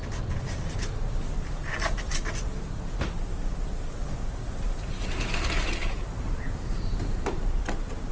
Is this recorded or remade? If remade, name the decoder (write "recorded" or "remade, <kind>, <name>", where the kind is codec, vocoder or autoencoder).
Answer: recorded